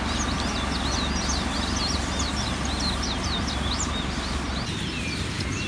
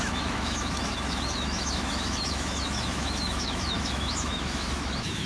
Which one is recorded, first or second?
first